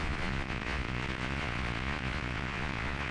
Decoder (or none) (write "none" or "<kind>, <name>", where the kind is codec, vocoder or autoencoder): vocoder, Vocos